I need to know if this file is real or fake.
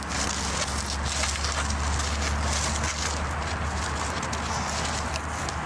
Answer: real